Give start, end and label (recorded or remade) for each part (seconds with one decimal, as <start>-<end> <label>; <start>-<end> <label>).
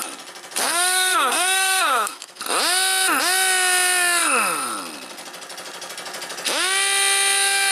0.0-0.6 recorded; 0.6-2.4 remade; 2.4-7.7 recorded